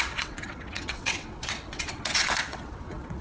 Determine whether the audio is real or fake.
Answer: fake